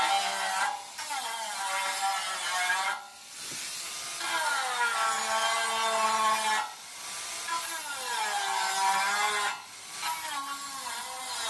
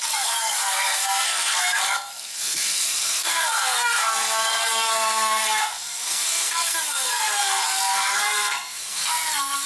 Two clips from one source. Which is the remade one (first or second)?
second